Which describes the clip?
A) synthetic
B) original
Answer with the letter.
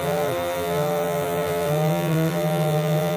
A